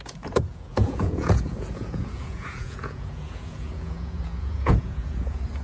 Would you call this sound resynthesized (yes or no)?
yes